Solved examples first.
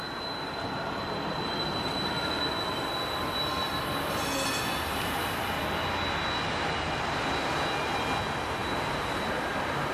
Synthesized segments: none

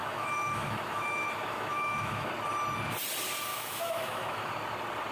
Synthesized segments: 0.0-2.3; 3.5-4.5

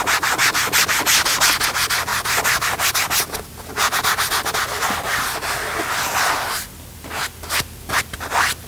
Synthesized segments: none

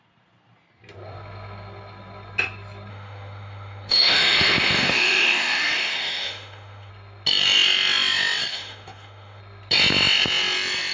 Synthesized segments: 2.9-6.9; 8.5-9.4

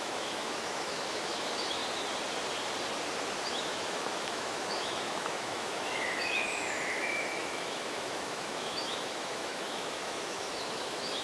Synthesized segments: 0.0-1.8; 3.5-11.2

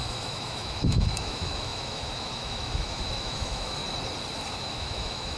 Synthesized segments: 0.0-3.8; 4.5-5.4